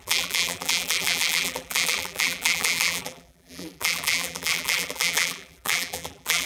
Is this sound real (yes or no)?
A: no